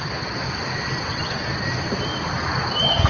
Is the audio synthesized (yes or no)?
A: no